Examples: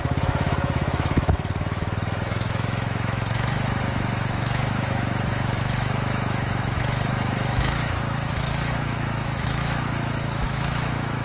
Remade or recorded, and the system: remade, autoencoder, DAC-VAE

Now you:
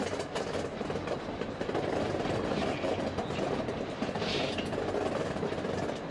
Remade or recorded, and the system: recorded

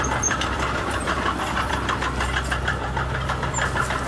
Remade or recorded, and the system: remade, vocoder, BigVGAN v2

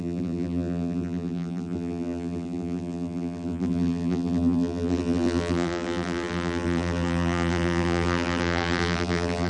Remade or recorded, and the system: remade, vocoder, BigVGAN v2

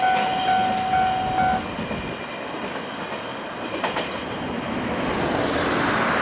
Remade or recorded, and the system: recorded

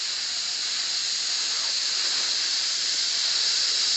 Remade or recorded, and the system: recorded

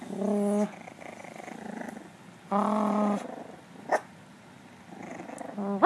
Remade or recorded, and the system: recorded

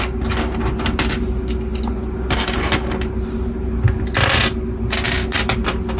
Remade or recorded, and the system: recorded